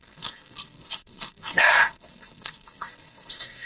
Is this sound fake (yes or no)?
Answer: yes